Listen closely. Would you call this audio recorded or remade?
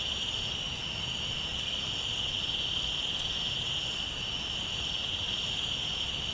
recorded